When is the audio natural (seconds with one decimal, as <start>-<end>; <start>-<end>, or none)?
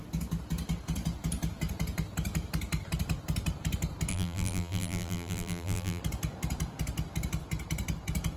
0.0-4.1; 6.0-8.4